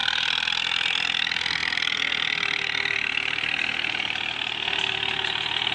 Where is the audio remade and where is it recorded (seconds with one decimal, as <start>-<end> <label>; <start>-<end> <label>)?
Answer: 0.0-5.7 recorded